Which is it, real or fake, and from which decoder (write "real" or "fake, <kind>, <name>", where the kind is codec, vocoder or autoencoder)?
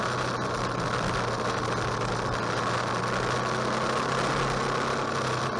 real